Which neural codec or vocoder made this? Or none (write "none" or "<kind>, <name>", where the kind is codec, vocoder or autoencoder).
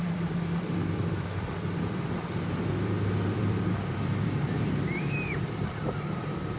vocoder, BigVGAN v2